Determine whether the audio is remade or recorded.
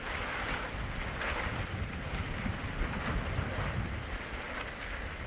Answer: recorded